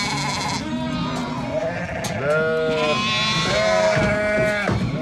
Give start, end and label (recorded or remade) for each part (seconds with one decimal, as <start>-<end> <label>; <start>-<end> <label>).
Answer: 0.0-5.0 recorded